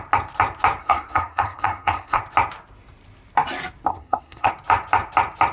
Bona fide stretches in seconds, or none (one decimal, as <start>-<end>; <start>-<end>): 0.0-0.8; 2.2-3.9; 4.5-5.5